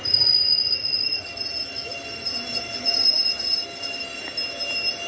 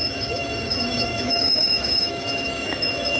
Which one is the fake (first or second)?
second